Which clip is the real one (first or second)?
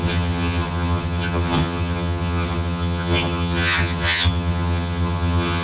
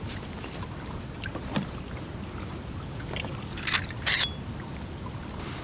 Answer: second